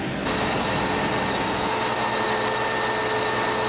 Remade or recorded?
recorded